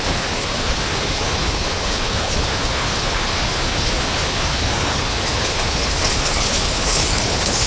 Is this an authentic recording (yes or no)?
no